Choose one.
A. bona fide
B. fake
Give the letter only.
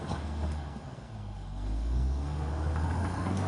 B